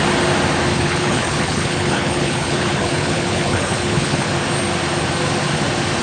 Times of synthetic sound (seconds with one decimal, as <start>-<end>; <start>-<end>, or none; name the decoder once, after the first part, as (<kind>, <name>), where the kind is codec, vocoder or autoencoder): 0.7-4.3 (codec, HILCodec)

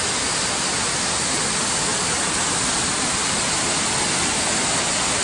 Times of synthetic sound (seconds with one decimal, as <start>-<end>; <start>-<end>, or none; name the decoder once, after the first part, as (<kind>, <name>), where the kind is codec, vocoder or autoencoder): none